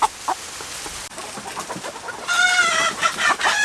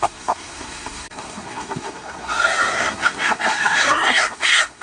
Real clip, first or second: first